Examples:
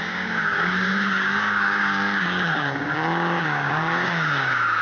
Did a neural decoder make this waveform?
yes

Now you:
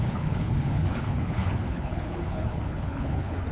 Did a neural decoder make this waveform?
yes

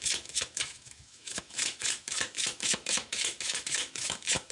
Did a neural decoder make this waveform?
yes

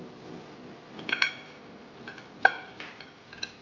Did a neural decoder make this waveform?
no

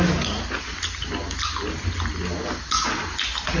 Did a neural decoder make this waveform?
no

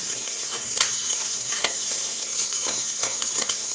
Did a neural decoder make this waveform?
yes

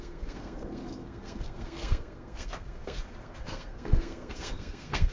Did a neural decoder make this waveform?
yes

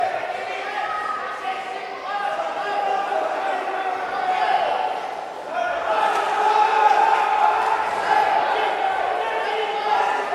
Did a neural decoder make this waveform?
no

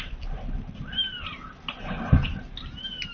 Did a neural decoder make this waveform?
no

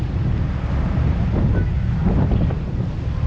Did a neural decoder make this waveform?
no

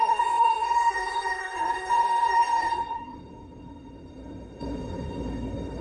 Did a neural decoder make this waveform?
yes